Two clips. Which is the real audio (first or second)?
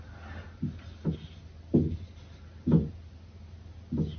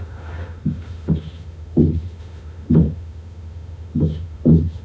first